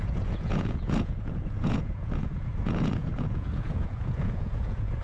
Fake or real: fake